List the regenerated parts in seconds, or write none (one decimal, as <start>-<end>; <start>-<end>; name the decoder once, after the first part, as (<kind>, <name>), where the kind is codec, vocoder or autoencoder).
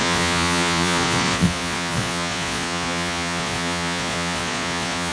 0.0-5.1 (vocoder, Vocos)